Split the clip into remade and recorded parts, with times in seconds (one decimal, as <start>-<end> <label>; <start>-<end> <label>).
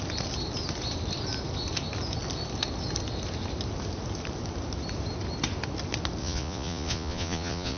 0.0-6.2 recorded; 6.2-7.8 remade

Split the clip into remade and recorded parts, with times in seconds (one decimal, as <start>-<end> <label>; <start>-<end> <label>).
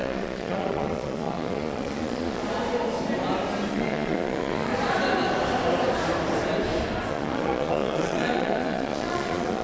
0.0-2.4 remade; 2.4-3.7 recorded; 3.7-4.7 remade; 4.7-7.1 recorded; 7.1-9.6 remade